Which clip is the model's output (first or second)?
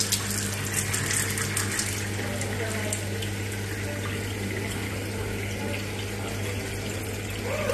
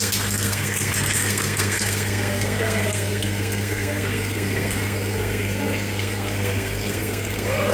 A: second